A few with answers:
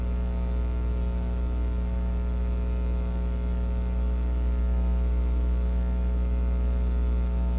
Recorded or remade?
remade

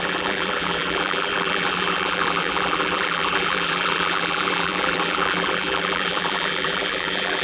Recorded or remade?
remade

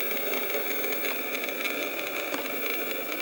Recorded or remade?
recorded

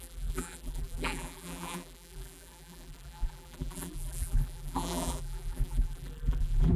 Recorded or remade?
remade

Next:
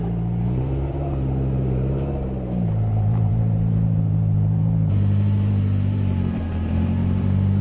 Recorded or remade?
remade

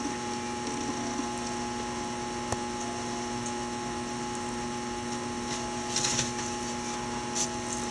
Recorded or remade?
recorded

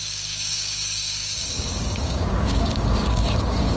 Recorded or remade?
remade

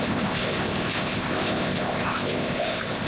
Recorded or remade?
remade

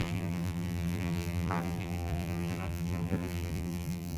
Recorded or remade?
remade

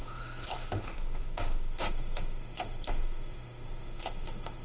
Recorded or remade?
remade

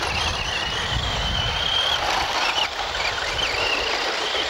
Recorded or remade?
recorded